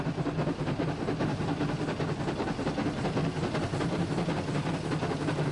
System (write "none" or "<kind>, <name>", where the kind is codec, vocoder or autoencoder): none